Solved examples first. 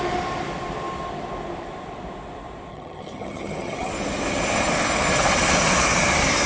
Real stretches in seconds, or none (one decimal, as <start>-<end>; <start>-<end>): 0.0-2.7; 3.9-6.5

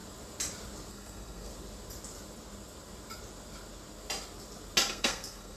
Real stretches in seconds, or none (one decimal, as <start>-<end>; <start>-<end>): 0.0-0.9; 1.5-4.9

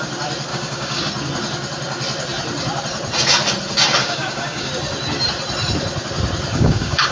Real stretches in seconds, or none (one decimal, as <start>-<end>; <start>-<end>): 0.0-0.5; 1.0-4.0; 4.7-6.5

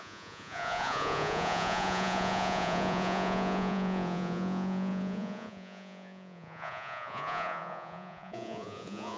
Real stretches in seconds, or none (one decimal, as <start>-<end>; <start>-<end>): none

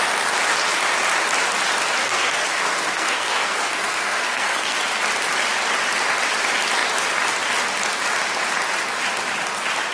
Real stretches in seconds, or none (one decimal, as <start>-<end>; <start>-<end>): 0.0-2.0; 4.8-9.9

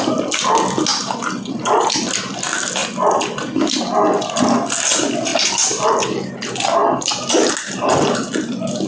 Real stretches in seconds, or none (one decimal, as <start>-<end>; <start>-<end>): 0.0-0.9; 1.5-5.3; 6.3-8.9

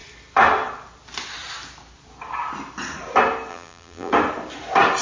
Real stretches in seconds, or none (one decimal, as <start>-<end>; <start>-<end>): 0.0-3.5; 4.1-5.0